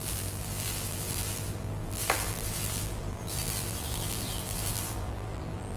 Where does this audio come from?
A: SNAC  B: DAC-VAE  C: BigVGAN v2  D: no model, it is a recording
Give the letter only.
C